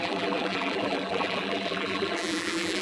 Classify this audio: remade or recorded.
remade